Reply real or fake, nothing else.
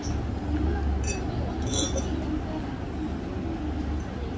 real